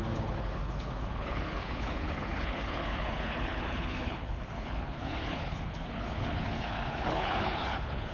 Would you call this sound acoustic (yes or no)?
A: no